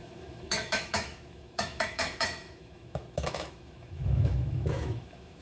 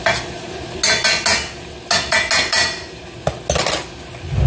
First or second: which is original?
second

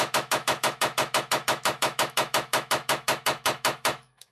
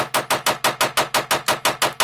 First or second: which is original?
second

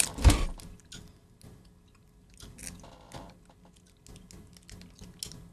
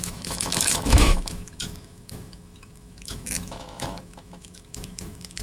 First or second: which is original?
first